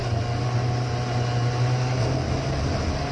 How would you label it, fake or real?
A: real